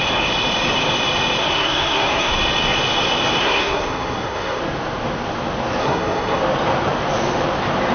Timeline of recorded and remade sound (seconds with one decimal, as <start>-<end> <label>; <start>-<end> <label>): 0.0-1.4 recorded; 1.4-2.3 remade; 2.3-3.4 recorded; 3.4-4.6 remade; 4.6-5.8 recorded; 5.8-6.4 remade; 6.4-7.9 recorded